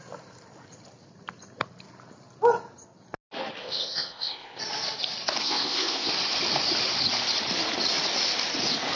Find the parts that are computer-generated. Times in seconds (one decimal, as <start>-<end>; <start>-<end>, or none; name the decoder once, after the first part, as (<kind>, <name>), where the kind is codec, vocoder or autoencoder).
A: 3.6-4.6 (codec, ZipCodec); 5.4-6.1